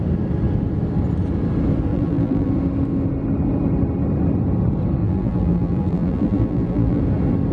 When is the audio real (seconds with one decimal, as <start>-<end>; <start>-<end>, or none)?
0.0-1.9; 2.5-5.0; 7.0-7.5